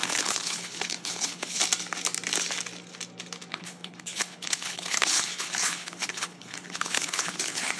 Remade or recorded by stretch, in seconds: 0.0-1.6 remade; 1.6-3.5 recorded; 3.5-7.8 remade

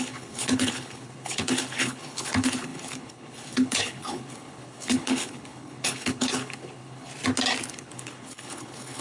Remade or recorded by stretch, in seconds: 0.0-7.1 remade; 7.1-7.7 recorded; 7.7-9.0 remade

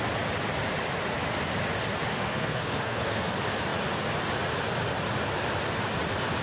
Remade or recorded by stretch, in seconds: 0.0-2.1 recorded; 2.1-3.3 remade; 3.3-6.4 recorded

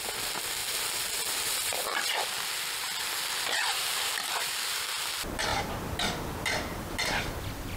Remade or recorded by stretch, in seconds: 0.0-7.8 recorded

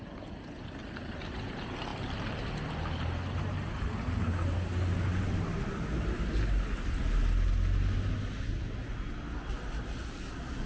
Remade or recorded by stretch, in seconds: 0.0-10.7 recorded

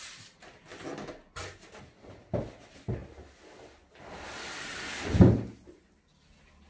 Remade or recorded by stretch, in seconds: 0.0-6.7 recorded